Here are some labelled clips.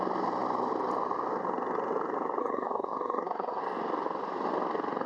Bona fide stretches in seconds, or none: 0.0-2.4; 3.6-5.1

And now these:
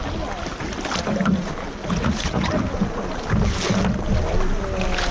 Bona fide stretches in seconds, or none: 0.0-1.8; 2.5-5.1

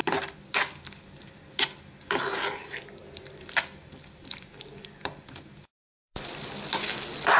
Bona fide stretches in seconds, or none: 0.0-3.0; 6.5-7.4

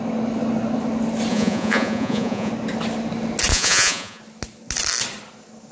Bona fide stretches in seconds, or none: 0.0-1.3; 2.5-3.5; 4.2-5.7

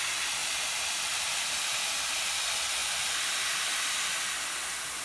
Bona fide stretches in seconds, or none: 0.0-5.0